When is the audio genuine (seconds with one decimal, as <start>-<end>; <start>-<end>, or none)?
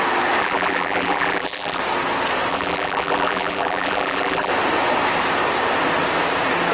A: 0.0-0.4; 1.8-2.5; 4.5-6.7